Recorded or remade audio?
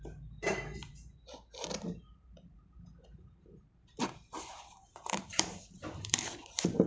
remade